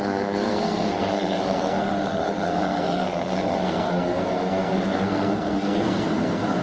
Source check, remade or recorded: remade